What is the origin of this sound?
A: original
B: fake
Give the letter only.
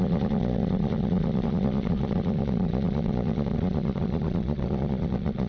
B